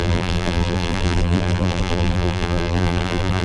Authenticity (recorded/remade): remade